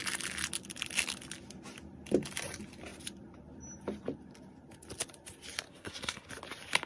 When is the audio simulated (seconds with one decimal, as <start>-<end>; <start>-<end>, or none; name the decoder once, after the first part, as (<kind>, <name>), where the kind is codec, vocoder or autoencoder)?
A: 5.7-6.3 (codec, SNAC)